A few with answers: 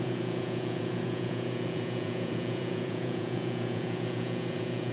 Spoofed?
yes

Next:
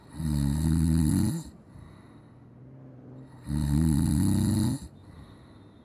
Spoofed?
no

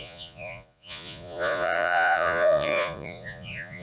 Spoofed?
yes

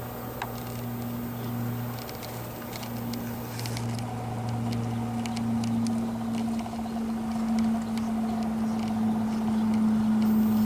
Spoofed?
no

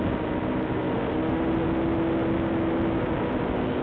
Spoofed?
no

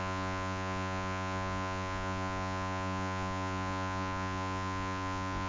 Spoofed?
yes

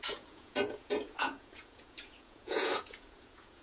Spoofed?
yes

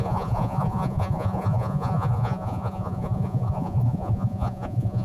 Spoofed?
yes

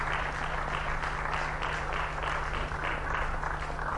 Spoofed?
no